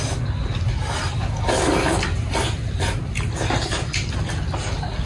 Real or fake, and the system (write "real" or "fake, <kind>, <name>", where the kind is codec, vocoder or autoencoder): real